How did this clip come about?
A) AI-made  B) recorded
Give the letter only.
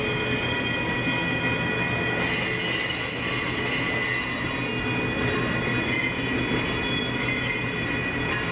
B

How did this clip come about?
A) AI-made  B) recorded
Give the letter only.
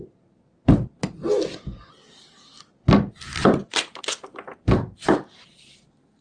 B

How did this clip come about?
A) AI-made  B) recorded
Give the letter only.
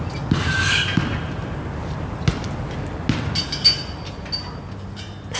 B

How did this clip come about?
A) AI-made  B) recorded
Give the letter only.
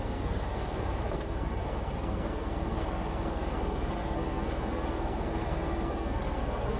A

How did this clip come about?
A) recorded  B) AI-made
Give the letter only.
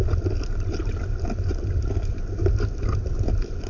A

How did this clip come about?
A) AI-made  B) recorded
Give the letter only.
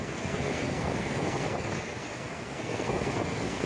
A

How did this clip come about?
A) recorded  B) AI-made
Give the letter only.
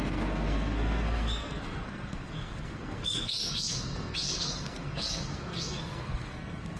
B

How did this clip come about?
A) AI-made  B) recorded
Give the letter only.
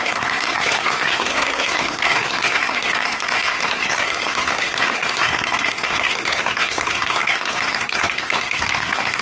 A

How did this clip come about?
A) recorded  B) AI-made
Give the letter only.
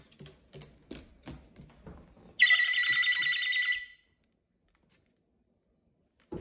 A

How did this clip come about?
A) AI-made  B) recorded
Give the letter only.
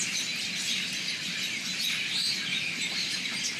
B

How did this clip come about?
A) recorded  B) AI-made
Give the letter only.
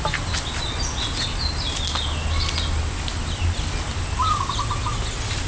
A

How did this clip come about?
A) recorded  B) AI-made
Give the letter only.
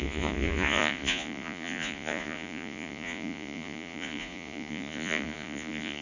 B